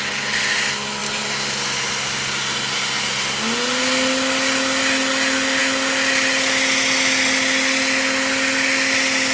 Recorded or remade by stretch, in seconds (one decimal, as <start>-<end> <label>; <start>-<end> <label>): 0.0-9.3 recorded